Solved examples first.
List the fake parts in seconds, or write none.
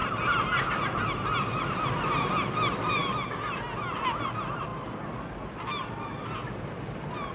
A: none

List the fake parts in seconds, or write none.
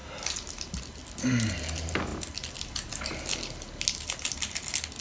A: none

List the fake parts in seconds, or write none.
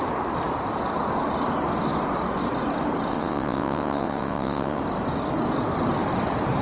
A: 3.1-4.8 (vocoder, WaveNeXt)